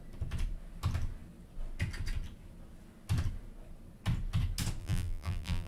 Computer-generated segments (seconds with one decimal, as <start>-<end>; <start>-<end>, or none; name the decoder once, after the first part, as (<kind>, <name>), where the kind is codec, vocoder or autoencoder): 4.8-5.7 (vocoder, BigVGAN v2)